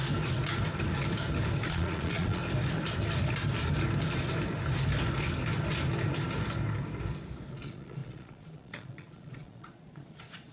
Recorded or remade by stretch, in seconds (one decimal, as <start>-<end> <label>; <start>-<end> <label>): 0.0-1.7 recorded; 1.7-2.4 remade; 2.4-7.5 recorded; 7.5-10.5 remade